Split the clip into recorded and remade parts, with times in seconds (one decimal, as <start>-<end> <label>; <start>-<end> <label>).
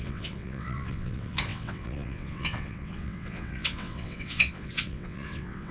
0.0-5.7 remade